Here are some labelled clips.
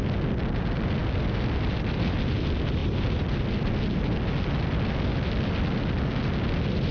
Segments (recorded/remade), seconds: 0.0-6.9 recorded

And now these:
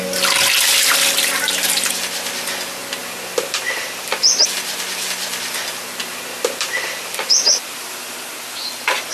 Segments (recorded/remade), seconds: 0.0-3.0 recorded; 3.0-4.5 remade; 4.5-6.0 recorded; 6.0-8.3 remade; 8.3-9.1 recorded

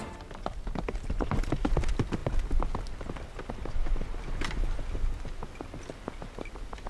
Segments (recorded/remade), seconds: 0.0-6.9 recorded

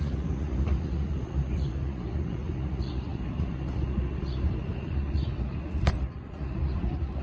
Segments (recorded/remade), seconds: 0.0-7.2 remade

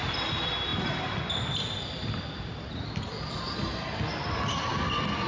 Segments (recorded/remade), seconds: 0.0-5.3 recorded

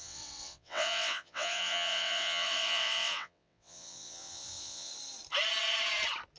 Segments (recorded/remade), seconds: 0.0-4.9 remade; 4.9-6.4 recorded

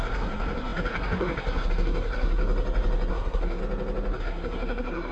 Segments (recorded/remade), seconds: 0.0-2.4 remade; 2.4-3.1 recorded; 3.1-3.6 remade; 3.6-4.2 recorded; 4.2-5.1 remade